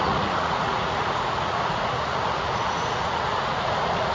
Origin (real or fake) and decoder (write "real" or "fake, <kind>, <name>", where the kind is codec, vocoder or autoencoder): fake, vocoder, Vocos